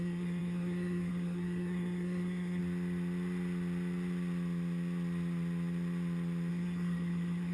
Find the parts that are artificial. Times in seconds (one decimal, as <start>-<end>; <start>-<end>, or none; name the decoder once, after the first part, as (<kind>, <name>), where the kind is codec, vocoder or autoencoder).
0.0-2.6 (codec, SNAC); 6.5-7.5